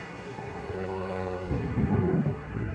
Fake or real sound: fake